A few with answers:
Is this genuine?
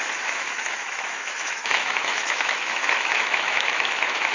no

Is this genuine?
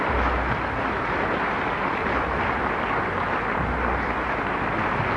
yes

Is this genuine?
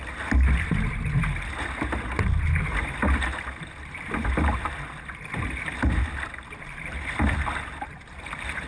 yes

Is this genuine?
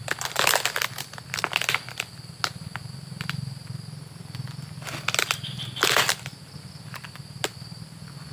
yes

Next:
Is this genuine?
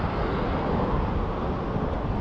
yes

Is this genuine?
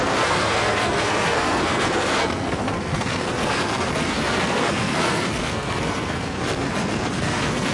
no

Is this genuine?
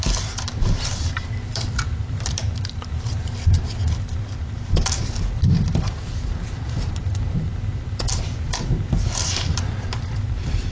no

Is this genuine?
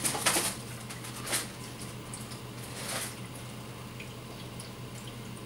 yes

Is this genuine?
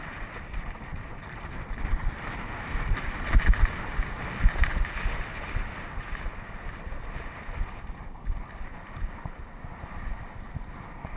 yes